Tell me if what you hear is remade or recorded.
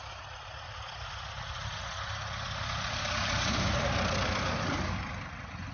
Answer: recorded